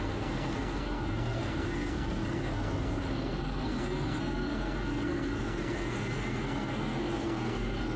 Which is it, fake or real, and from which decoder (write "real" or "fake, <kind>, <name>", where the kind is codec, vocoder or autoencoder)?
fake, codec, SNAC